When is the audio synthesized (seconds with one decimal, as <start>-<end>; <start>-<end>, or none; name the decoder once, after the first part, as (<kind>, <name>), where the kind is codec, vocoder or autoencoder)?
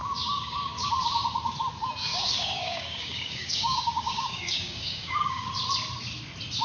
0.0-0.9 (codec, DAC); 2.1-5.5